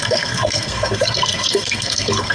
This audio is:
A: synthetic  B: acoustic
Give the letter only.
A